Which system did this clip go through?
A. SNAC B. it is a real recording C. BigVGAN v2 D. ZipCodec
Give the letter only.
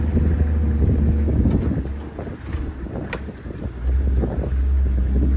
B